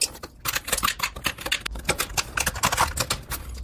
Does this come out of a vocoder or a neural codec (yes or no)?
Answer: no